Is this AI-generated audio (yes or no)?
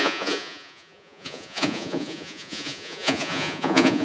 yes